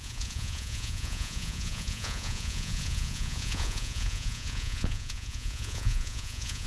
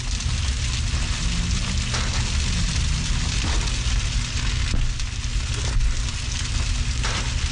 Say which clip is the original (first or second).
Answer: second